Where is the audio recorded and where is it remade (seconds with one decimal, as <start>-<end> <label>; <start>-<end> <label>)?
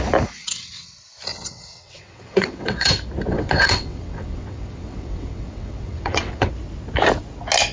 0.0-0.4 recorded; 0.4-0.9 remade; 0.9-1.3 recorded; 1.3-2.9 remade; 2.9-3.3 recorded; 3.3-6.5 remade; 6.5-7.7 recorded